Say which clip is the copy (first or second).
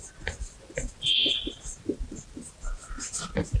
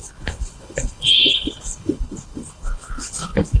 second